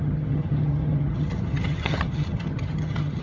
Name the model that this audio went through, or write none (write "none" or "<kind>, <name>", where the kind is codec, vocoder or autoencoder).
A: vocoder, HiFi-GAN